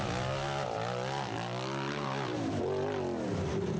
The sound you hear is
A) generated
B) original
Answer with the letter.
B